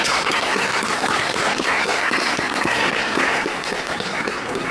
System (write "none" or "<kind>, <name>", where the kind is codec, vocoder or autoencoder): codec, SNAC